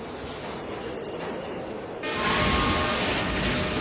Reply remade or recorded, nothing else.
recorded